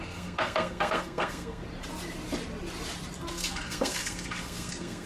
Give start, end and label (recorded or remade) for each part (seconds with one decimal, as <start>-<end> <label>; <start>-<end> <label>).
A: 0.0-1.6 remade; 1.6-3.3 recorded; 3.3-5.1 remade